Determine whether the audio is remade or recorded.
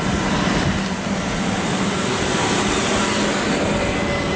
recorded